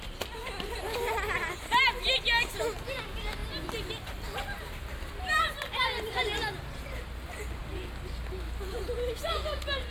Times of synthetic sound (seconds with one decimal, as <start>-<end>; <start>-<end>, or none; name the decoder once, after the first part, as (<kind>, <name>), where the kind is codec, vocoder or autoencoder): none